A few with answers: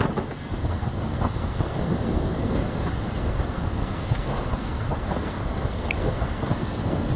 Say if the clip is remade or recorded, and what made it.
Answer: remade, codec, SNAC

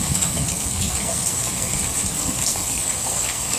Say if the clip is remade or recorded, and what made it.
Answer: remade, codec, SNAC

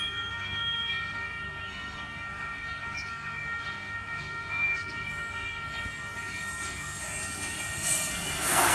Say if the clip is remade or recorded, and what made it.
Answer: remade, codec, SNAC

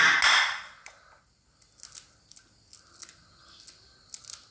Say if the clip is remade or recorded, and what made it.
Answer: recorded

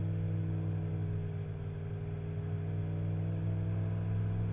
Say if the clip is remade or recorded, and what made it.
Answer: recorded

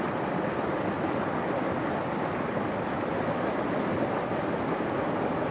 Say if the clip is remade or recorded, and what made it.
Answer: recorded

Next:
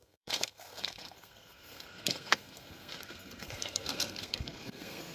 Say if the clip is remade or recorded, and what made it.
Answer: remade, codec, SNAC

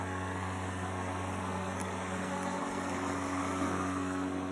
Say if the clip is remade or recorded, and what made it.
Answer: remade, codec, SNAC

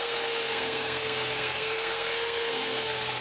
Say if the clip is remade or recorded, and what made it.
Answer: remade, codec, SNAC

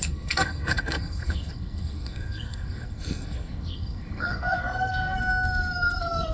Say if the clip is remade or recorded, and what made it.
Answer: remade, codec, SNAC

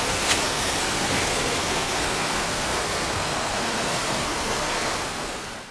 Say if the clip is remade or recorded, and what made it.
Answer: remade, codec, SNAC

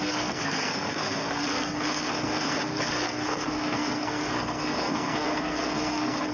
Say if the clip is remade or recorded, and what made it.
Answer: remade, codec, SNAC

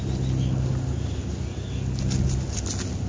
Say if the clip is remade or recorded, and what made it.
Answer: recorded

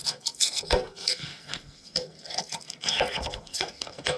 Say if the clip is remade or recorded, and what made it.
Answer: remade, codec, SNAC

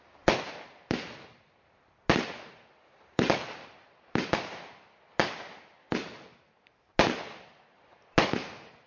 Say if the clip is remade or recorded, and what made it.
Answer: recorded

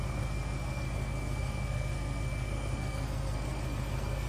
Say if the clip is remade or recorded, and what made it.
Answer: remade, codec, SNAC